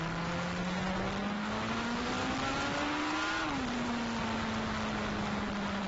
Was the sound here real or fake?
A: real